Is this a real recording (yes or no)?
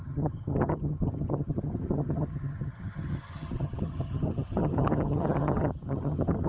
no